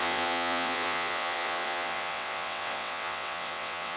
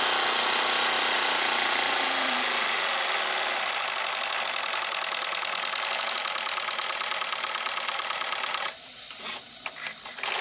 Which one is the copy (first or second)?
first